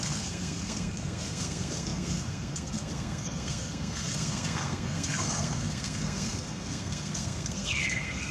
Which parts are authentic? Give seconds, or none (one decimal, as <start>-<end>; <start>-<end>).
none